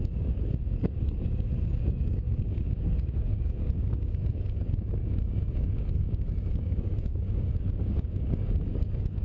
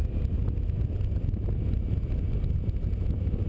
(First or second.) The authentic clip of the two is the second